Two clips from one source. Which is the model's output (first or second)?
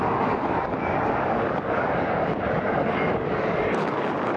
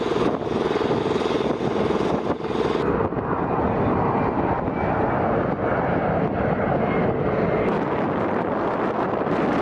first